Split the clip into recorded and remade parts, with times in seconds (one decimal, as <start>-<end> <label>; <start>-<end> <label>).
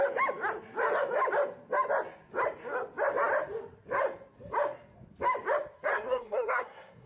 0.0-5.9 recorded; 5.9-7.1 remade